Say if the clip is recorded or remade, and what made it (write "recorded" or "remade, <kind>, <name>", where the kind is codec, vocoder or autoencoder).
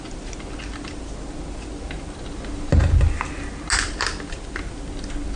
recorded